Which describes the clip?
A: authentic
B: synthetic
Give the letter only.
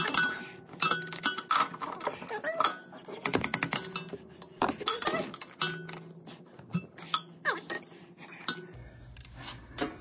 A